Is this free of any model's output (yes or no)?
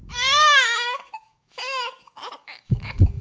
no